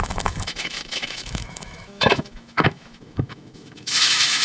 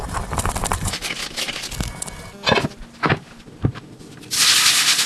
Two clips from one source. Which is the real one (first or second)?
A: second